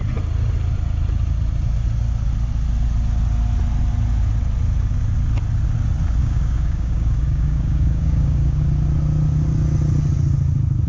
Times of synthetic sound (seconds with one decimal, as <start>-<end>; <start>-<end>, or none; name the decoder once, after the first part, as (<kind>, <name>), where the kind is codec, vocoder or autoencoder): 6.2-8.6 (codec, DAC)